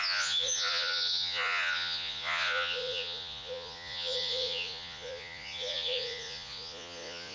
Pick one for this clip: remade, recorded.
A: remade